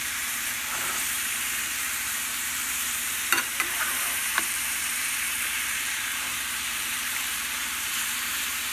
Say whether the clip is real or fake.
fake